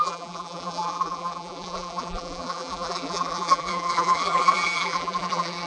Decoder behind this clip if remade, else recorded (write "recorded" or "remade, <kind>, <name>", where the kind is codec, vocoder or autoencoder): remade, vocoder, BigVGAN v2